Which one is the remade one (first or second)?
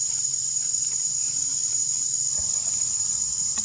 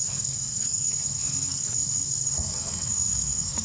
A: second